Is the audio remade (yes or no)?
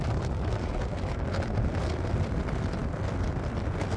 no